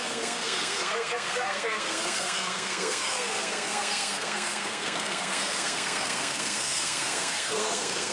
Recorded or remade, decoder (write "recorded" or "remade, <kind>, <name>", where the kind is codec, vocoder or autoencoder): remade, codec, SNAC